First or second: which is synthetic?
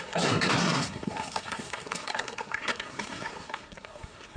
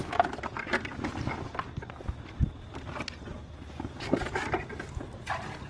first